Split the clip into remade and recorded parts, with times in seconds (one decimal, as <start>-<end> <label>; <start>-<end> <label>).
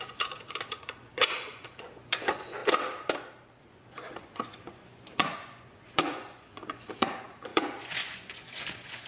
0.0-2.6 remade; 2.6-3.6 recorded; 3.6-9.1 remade